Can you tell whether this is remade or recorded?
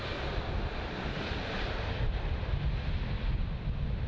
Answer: recorded